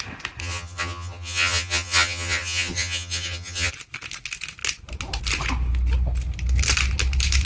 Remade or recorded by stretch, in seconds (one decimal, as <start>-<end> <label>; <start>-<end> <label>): 0.0-0.4 recorded; 0.4-3.7 remade; 3.7-7.4 recorded